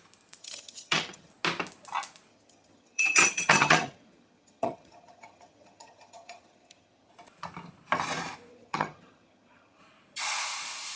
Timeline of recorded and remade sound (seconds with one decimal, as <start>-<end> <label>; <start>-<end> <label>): 0.0-0.4 recorded; 0.4-1.3 remade; 1.3-2.3 recorded; 2.3-7.1 remade; 7.1-8.5 recorded; 8.5-9.8 remade; 9.8-11.0 recorded